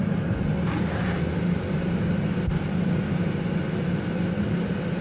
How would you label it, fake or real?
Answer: real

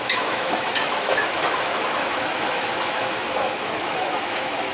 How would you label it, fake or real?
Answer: fake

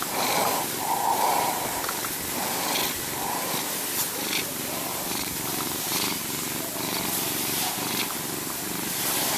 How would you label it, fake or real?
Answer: real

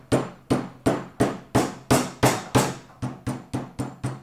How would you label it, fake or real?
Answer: real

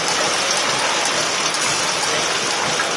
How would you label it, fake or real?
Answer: real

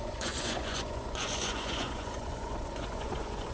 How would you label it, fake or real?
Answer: fake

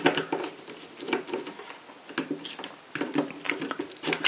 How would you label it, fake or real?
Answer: real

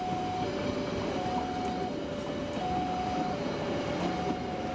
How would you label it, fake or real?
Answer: real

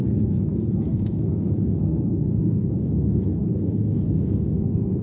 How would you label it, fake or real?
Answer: fake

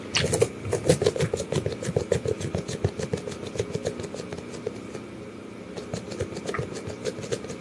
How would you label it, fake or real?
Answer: real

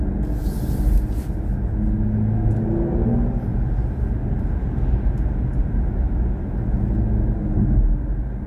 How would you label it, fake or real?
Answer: real